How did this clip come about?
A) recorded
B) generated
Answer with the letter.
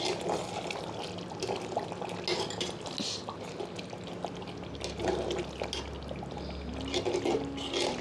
A